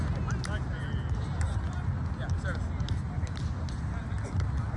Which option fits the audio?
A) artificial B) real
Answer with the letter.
B